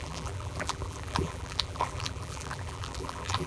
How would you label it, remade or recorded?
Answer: remade